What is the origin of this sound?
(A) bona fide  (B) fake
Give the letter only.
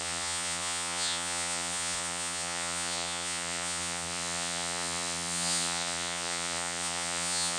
B